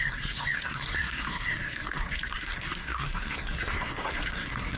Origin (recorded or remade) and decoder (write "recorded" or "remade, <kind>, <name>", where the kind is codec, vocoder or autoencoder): remade, codec, SNAC